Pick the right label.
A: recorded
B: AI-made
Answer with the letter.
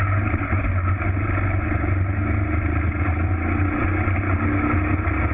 A